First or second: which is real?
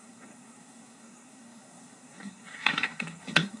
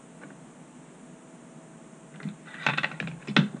second